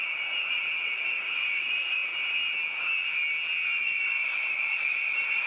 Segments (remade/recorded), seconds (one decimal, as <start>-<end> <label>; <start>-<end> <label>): 0.0-2.0 remade; 2.0-3.8 recorded; 3.8-5.5 remade